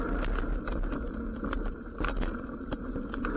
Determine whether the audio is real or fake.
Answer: real